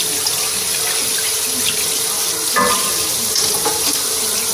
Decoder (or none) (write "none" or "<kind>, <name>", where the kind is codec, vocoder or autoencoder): none